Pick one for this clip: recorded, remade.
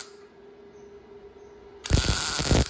recorded